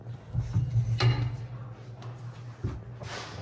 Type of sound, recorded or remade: recorded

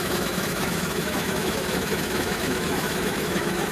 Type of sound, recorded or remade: remade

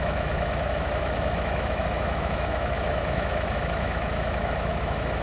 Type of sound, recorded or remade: remade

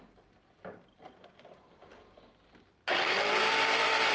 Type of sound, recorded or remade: remade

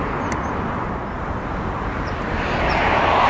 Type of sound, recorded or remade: recorded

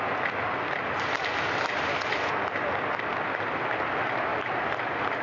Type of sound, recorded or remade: recorded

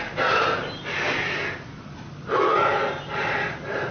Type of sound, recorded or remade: recorded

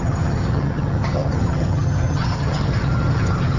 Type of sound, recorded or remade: remade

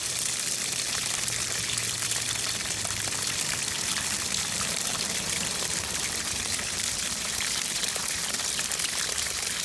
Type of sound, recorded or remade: remade